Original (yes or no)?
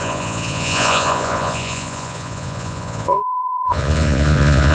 no